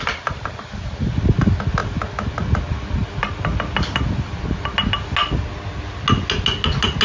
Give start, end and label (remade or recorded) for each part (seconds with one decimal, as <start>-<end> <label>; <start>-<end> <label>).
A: 0.0-7.0 recorded